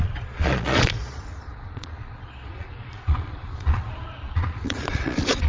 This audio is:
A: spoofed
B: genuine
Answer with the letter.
A